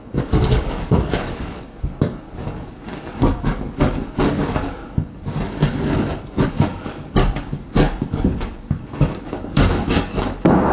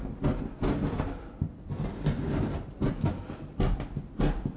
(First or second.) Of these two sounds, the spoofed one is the first